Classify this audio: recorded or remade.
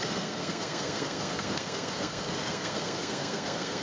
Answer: remade